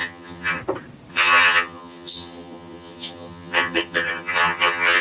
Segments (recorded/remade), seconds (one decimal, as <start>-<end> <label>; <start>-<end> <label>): 0.0-0.6 remade; 0.6-1.1 recorded; 1.1-5.0 remade